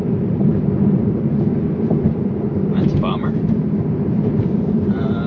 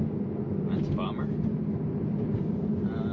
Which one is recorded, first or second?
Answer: second